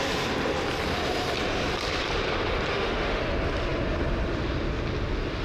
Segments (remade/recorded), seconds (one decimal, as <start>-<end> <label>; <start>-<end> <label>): 0.0-2.7 recorded; 2.7-3.2 remade; 3.2-5.4 recorded